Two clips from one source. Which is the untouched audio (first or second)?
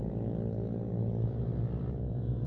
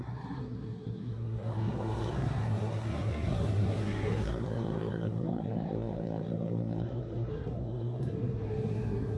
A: first